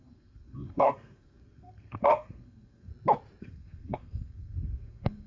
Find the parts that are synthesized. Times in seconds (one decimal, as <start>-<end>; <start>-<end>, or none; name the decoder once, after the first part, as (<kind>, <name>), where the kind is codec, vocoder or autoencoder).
0.0-2.9 (codec, SNAC); 3.4-5.3